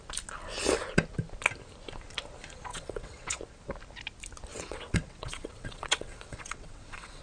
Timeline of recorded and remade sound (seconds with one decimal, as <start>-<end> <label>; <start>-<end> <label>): 0.0-2.7 recorded; 2.7-3.4 remade; 3.4-4.5 recorded; 4.5-7.2 remade